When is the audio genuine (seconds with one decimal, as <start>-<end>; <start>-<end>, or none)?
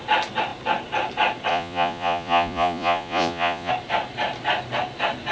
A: 0.0-1.5; 3.7-5.3